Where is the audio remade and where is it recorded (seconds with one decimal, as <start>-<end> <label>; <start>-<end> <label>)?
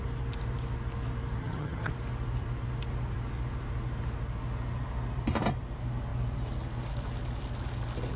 0.0-1.4 recorded; 1.4-1.9 remade; 1.9-8.2 recorded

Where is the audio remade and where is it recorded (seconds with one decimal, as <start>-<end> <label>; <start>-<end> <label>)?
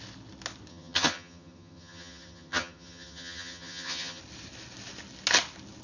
0.0-0.7 recorded; 0.7-4.2 remade; 4.2-5.8 recorded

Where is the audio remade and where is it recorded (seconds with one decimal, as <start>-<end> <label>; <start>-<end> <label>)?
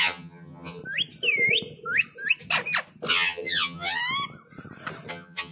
0.0-0.8 remade; 0.8-3.1 recorded; 3.1-4.0 remade; 4.0-5.1 recorded; 5.1-5.5 remade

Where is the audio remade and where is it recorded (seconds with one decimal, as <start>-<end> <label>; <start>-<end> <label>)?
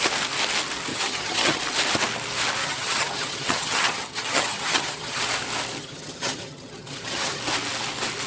0.0-0.9 recorded; 0.9-1.6 remade; 1.6-2.6 recorded; 2.6-5.2 remade; 5.2-5.8 recorded; 5.8-7.4 remade; 7.4-8.3 recorded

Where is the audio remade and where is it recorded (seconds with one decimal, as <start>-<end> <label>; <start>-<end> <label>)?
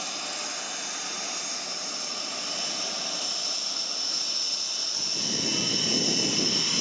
0.0-6.8 recorded